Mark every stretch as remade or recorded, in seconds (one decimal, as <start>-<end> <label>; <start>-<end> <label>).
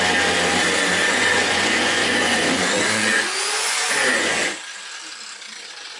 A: 0.0-1.0 recorded; 1.0-4.6 remade; 4.6-6.0 recorded